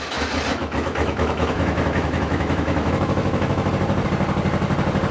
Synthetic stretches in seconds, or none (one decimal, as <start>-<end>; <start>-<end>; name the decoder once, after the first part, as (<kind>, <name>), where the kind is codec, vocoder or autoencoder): 0.6-3.7 (autoencoder, DAC-VAE)

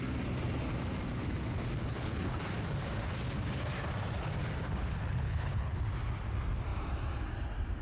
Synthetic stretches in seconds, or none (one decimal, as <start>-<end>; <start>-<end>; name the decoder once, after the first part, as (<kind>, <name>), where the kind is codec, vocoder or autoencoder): 1.8-2.4 (codec, HILCodec); 4.6-5.7

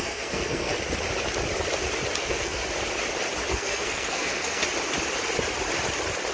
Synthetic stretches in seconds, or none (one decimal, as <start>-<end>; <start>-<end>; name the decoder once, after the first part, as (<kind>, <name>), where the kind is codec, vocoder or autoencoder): 0.0-0.7 (codec, SNAC); 2.2-2.6; 3.5-4.6

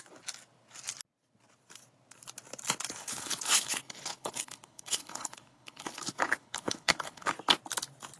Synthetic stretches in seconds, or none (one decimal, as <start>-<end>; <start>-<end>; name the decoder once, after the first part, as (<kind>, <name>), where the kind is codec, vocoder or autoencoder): 3.0-7.3 (codec, HILCodec)